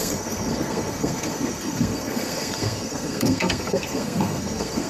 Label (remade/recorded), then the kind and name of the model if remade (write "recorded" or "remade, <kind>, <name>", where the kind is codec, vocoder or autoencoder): remade, codec, SNAC